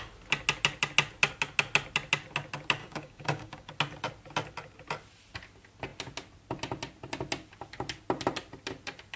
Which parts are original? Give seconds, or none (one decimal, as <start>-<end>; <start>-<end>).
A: 0.0-2.8; 3.7-9.2